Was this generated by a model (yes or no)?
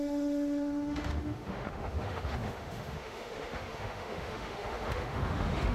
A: yes